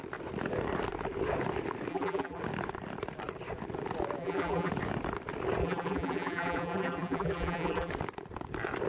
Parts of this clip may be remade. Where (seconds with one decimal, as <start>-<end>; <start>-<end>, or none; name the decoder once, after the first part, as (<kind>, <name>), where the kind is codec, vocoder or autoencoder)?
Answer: 1.9-2.4 (vocoder, BigVGAN v2); 4.2-4.7; 5.6-7.9

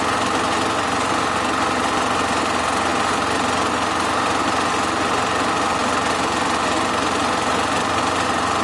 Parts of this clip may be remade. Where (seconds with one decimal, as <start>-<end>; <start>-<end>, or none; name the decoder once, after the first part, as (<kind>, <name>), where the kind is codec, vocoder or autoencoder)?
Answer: none

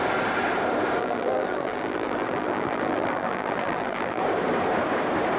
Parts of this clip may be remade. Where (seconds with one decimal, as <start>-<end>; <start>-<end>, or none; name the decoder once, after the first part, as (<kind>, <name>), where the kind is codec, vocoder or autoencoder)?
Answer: 1.0-4.2 (vocoder, BigVGAN v2)

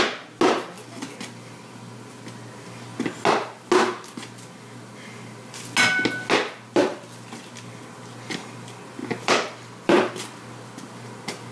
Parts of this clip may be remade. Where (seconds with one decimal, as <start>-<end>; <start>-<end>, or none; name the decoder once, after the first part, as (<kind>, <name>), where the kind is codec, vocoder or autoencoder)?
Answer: 9.0-10.1 (vocoder, BigVGAN v2)

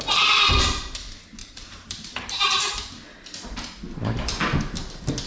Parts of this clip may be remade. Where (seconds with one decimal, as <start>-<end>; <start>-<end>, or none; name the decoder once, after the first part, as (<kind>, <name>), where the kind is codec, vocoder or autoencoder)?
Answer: 1.4-2.8 (vocoder, BigVGAN v2)